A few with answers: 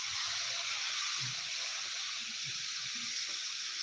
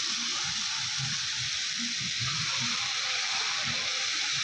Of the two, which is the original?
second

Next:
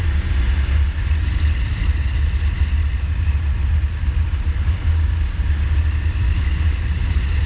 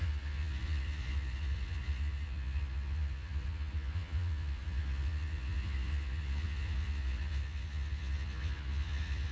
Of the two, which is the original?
first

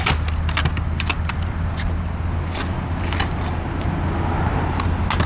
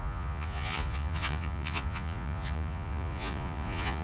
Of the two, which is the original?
first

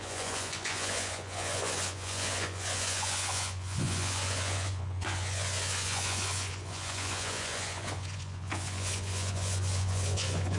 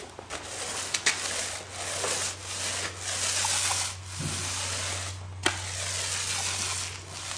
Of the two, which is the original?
second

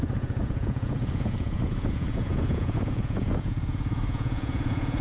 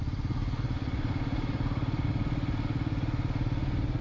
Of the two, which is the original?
second